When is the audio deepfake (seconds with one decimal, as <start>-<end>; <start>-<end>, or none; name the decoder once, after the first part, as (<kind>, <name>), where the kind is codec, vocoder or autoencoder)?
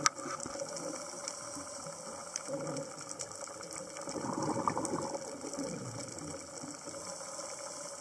1.2-1.8 (vocoder, BigVGAN v2)